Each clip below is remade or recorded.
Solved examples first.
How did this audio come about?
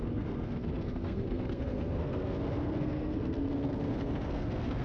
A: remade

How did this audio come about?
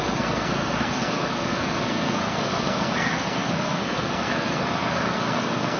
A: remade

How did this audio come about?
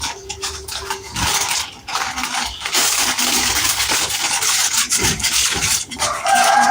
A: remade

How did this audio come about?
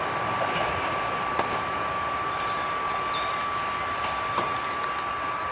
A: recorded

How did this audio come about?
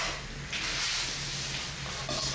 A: recorded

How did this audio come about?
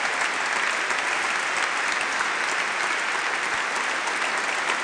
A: recorded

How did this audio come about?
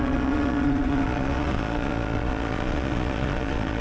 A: remade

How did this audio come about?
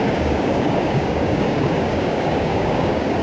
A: remade